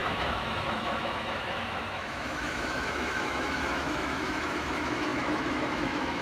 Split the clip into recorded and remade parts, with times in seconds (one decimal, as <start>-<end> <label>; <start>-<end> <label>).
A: 0.0-6.2 remade